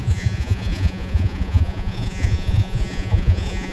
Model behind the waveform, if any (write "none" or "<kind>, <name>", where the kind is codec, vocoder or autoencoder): vocoder, Vocos